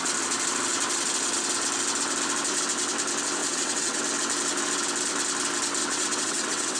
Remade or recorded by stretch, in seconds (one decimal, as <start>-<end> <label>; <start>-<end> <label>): 0.0-3.4 recorded; 3.4-4.0 remade; 4.0-5.8 recorded; 5.8-6.8 remade